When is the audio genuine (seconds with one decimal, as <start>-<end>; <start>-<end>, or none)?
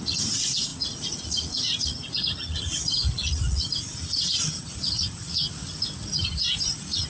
none